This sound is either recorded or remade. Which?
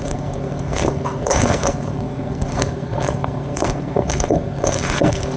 remade